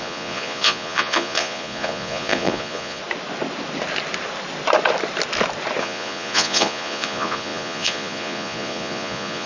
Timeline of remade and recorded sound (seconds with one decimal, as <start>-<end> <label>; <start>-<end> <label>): 0.0-3.0 remade; 3.0-5.8 recorded; 5.8-9.5 remade